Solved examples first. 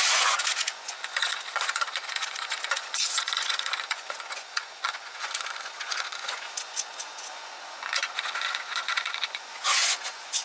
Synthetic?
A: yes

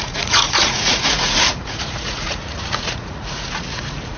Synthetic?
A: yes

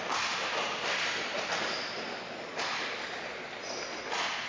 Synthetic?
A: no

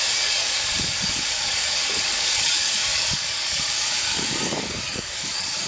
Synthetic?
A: yes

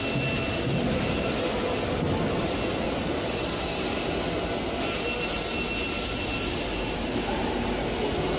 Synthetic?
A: no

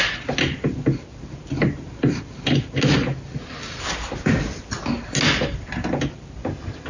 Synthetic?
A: no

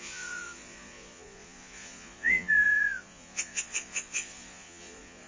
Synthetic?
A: yes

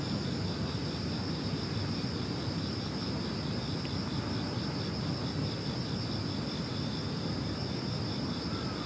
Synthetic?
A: no